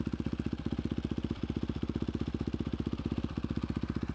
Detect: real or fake real